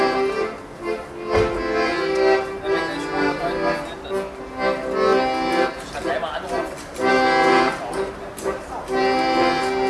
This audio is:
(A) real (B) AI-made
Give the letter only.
A